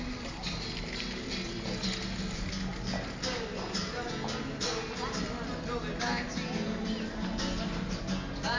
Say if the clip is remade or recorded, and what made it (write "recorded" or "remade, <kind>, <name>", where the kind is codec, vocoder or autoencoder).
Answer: recorded